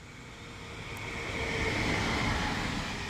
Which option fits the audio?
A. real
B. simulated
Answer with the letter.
A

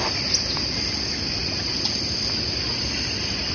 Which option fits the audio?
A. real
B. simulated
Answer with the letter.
A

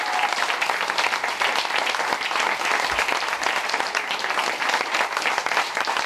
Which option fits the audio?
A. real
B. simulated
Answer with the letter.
A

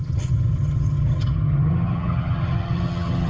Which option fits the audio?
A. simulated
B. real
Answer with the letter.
A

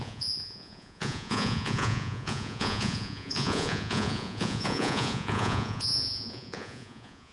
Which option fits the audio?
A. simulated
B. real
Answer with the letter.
A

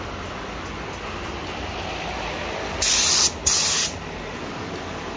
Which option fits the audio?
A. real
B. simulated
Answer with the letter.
A